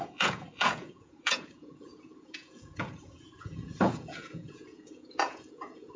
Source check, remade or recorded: remade